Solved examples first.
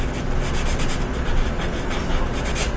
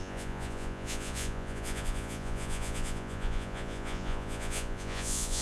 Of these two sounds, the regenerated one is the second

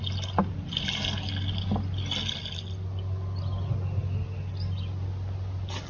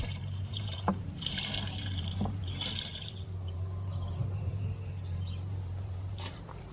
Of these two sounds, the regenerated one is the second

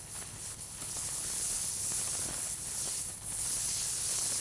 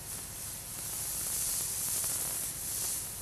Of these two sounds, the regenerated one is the first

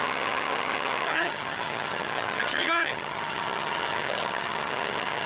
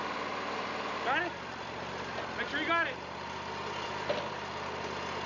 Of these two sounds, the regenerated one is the first